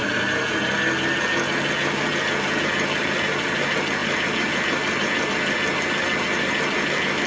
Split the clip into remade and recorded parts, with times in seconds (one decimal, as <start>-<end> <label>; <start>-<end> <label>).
0.0-7.3 recorded